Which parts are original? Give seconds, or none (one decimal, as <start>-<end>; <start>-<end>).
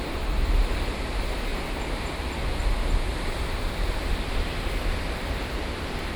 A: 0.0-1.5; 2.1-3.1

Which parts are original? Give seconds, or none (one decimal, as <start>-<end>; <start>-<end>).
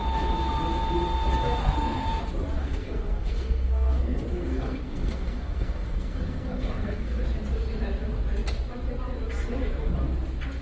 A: 0.0-1.6; 2.2-2.6; 7.2-10.6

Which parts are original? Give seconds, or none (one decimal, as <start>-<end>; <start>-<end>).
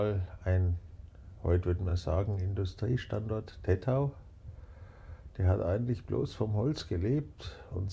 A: 0.0-7.9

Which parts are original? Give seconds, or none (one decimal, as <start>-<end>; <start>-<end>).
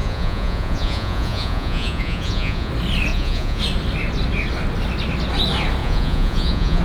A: 2.7-3.1; 3.6-5.8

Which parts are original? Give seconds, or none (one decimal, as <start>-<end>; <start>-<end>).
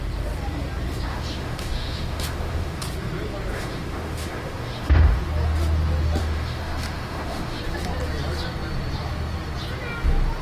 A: 0.0-1.1; 2.8-3.5; 5.2-6.2; 7.6-10.4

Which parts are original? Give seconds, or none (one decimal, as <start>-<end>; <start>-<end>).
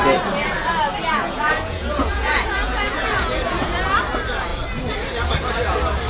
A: 0.0-1.1; 3.8-6.1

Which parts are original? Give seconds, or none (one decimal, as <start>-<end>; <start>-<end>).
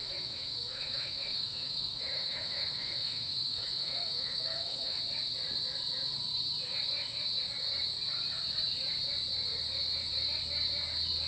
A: 5.0-11.3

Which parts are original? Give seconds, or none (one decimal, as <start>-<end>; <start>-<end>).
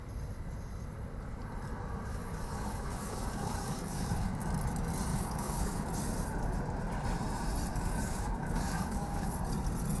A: 0.0-2.1; 4.5-5.1; 5.9-7.7; 9.3-10.0